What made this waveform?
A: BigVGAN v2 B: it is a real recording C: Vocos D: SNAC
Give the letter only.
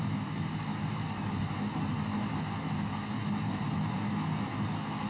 B